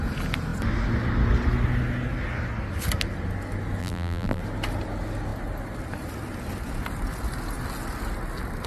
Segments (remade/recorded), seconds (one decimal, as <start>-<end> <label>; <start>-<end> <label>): 0.0-3.8 recorded; 3.8-4.4 remade; 4.4-8.7 recorded